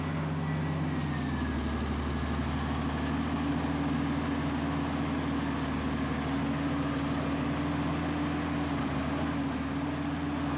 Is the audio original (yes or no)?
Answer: yes